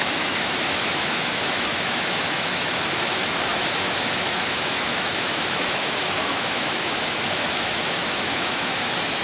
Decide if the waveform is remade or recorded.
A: remade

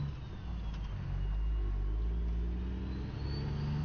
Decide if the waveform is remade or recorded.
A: recorded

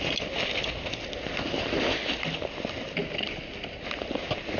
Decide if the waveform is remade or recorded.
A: recorded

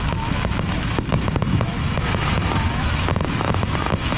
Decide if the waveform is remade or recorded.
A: remade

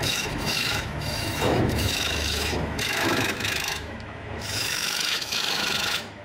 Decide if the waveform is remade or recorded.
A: remade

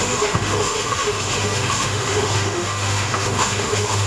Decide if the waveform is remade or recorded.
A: remade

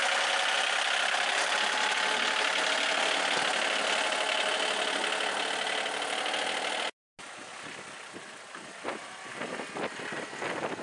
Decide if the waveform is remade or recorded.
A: recorded